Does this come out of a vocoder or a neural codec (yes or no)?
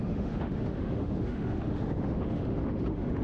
yes